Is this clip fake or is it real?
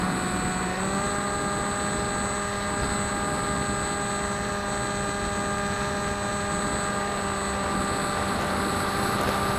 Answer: real